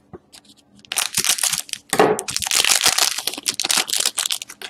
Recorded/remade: recorded